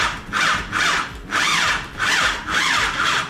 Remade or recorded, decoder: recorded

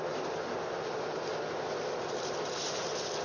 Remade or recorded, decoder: recorded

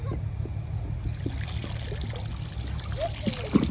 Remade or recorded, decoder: recorded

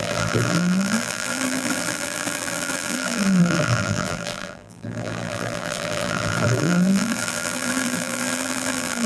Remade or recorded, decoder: remade, vocoder, BigVGAN v2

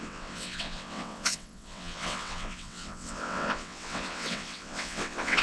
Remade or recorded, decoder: remade, vocoder, WaveNeXt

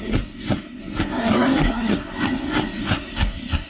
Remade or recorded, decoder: remade, codec, SNAC